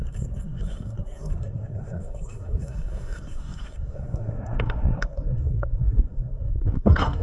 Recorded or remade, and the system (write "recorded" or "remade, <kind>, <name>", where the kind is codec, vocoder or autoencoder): remade, codec, SNAC